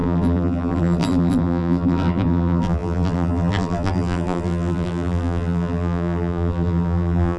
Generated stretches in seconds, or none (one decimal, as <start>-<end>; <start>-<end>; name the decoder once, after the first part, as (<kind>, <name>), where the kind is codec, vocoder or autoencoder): 0.0-7.4 (vocoder, BigVGAN v2)